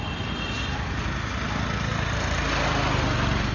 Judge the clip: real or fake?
real